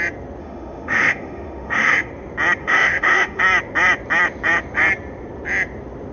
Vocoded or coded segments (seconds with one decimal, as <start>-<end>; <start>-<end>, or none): 0.4-2.1; 2.6-3.4